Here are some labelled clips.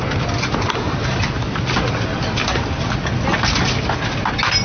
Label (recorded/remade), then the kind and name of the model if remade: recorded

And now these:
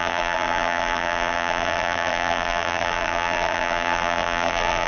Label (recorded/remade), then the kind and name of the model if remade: remade, vocoder, BigVGAN v2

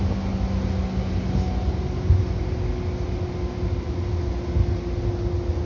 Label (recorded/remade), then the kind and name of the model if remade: recorded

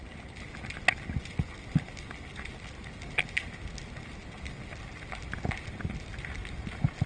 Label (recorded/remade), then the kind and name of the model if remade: recorded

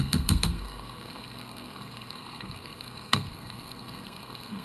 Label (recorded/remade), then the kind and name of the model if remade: remade, codec, SNAC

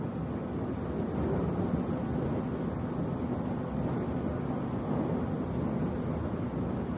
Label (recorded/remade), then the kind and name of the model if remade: recorded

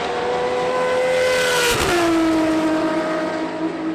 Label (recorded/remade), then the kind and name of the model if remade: recorded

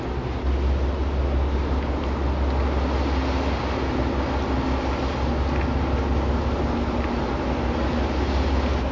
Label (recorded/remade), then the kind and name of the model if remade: recorded